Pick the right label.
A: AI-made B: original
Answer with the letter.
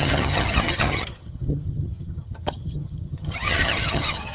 A